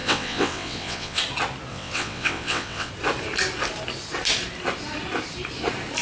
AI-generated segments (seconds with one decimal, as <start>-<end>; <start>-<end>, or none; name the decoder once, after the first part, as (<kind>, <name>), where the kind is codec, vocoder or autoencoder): 0.0-1.2 (vocoder, WaveNeXt); 1.7-2.9